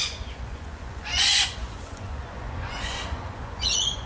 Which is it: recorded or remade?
remade